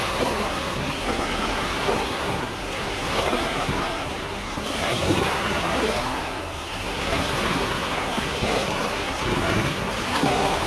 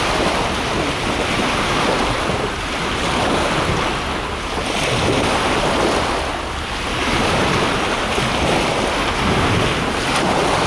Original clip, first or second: second